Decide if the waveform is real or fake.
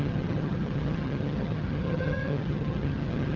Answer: fake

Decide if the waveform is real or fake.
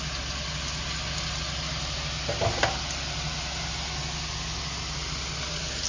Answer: real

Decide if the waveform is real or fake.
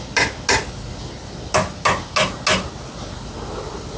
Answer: real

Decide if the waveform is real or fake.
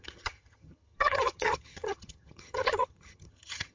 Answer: fake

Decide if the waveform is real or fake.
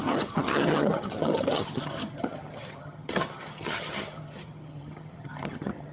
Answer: fake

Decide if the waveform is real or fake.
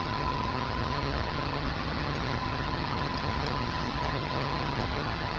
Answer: fake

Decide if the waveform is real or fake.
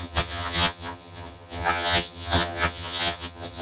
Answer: fake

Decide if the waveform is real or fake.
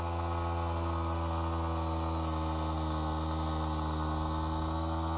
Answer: real